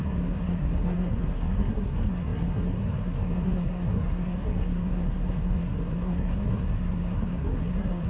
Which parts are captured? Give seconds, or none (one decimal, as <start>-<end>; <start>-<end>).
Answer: none